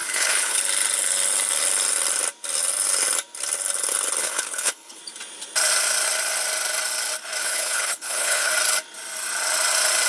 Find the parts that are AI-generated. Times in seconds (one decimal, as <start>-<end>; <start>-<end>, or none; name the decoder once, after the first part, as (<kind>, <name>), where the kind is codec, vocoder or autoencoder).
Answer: 0.0-0.6 (codec, HILCodec); 4.2-5.0; 7.4-8.5